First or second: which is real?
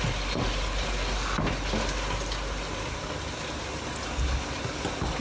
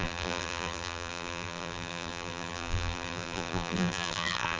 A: first